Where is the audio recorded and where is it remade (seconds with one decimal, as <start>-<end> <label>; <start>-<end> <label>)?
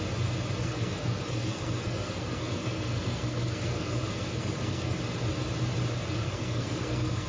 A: 0.0-0.6 recorded; 0.6-5.0 remade; 5.0-6.2 recorded; 6.2-7.3 remade